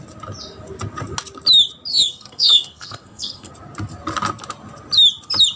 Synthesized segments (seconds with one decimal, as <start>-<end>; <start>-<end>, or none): 1.9-3.5